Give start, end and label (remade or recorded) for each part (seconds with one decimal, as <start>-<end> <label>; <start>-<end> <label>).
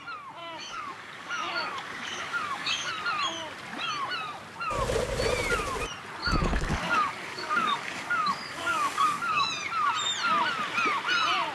0.0-0.4 recorded; 0.4-2.9 remade; 2.9-6.2 recorded; 6.2-9.5 remade; 9.5-11.5 recorded